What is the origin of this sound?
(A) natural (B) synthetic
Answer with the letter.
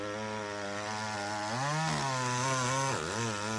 A